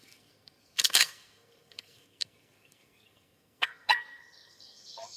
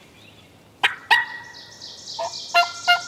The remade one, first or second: first